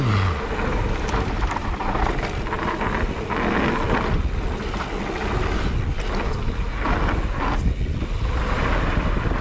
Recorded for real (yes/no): yes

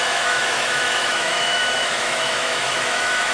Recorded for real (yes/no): no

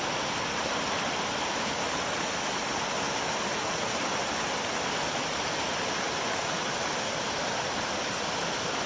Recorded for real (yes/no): yes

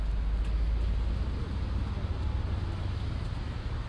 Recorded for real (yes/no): yes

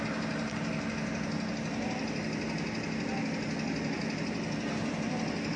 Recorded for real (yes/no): yes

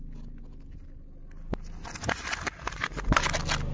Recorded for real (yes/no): yes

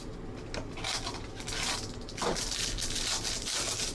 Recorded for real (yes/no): yes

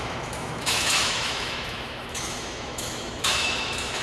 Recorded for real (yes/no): no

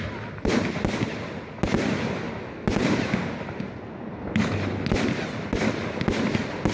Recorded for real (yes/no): yes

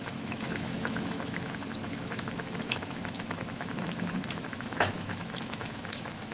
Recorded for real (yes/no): no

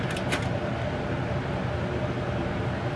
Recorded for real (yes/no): yes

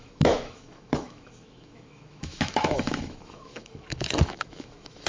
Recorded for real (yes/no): no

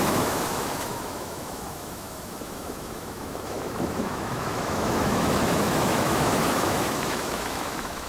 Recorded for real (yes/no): no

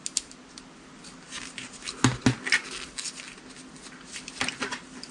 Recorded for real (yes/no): yes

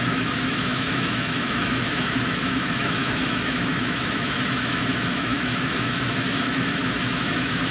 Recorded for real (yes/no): no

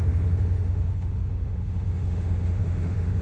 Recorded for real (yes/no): no